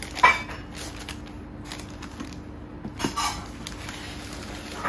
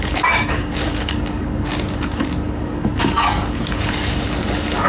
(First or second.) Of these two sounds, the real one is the first